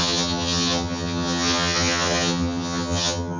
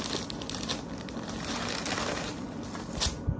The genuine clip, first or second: second